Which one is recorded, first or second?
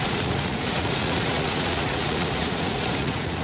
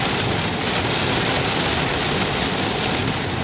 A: second